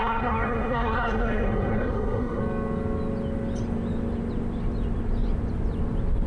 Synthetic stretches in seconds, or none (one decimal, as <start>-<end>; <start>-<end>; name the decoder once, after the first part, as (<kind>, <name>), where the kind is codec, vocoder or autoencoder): 0.0-2.4 (codec, SNAC)